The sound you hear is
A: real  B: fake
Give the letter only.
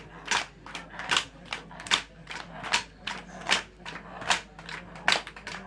A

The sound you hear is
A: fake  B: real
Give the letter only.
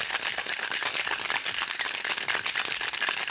B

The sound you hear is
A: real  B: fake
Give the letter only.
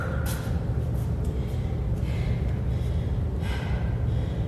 A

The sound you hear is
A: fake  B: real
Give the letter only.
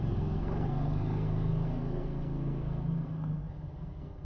A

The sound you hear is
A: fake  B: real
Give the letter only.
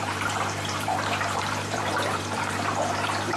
A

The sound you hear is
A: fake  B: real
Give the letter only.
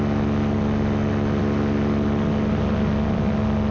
B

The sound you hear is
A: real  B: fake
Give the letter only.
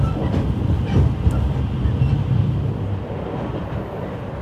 A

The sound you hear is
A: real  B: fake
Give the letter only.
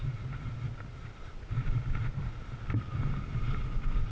A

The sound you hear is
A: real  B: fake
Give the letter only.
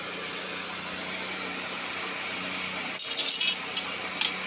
A